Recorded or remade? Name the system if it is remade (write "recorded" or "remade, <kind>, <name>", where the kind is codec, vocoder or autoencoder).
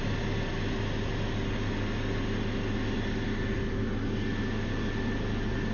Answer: recorded